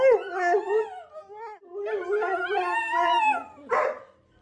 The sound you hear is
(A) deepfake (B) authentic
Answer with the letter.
B